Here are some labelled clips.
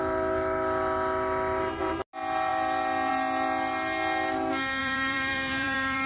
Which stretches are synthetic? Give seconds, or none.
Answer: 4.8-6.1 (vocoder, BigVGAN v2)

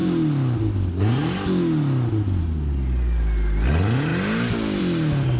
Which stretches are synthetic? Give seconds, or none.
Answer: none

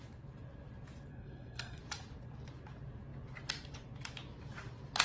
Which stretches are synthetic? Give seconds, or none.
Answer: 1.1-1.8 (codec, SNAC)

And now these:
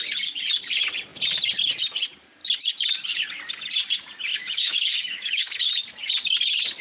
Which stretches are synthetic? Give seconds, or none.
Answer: 4.3-5.7 (autoencoder, DAC-VAE)